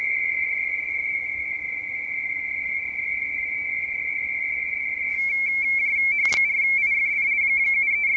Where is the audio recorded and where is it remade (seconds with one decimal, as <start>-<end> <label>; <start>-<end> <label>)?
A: 0.0-5.1 recorded; 5.1-7.3 remade; 7.3-8.2 recorded